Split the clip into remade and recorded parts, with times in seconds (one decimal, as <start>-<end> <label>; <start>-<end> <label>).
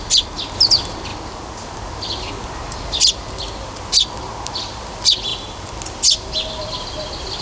0.0-7.4 recorded